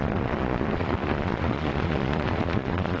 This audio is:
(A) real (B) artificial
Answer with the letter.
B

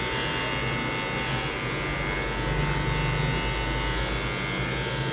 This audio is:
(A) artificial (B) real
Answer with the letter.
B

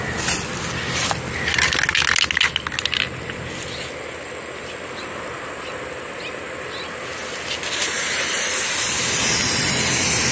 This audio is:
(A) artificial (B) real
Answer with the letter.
B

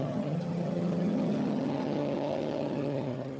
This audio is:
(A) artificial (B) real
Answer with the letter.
A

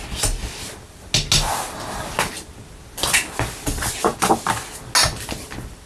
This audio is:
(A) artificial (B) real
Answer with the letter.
B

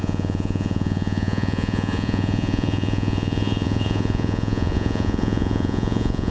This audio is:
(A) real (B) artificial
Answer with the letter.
B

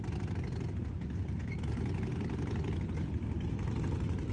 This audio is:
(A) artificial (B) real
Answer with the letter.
B